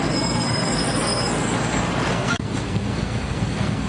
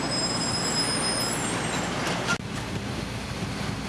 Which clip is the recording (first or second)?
second